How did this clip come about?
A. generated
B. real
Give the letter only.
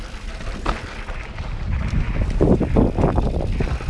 B